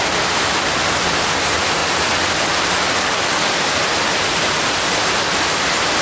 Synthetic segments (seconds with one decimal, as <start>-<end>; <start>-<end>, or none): none